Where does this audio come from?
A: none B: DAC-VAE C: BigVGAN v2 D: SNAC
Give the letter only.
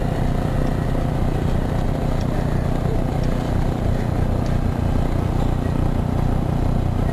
A